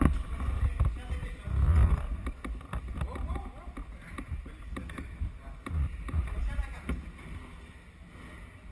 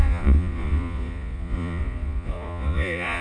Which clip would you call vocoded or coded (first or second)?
second